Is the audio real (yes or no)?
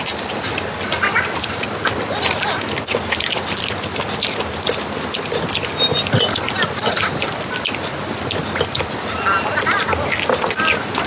yes